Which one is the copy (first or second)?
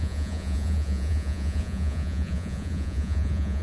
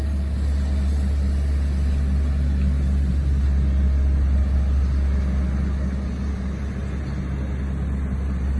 first